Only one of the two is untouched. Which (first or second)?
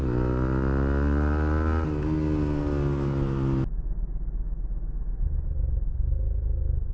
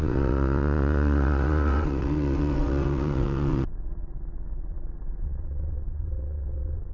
first